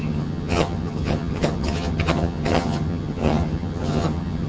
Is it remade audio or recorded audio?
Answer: remade